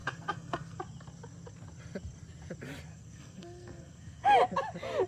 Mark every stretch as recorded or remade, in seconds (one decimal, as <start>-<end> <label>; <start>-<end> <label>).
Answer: 0.0-0.8 remade; 0.8-2.9 recorded; 2.9-4.2 remade; 4.2-5.1 recorded